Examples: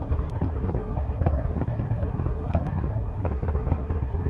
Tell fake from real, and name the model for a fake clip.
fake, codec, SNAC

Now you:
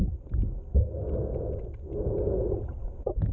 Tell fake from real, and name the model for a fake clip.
real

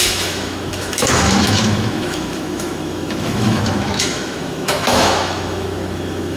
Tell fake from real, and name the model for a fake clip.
fake, autoencoder, DAC-VAE